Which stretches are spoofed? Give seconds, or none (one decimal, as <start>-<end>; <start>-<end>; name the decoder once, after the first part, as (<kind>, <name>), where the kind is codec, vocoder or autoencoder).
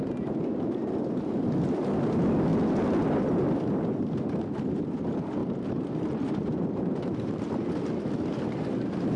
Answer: 5.4-7.5 (vocoder, BigVGAN v2)